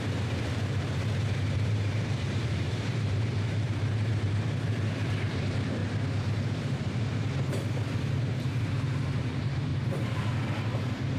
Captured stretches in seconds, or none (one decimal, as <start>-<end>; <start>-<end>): 5.8-8.3; 9.7-11.2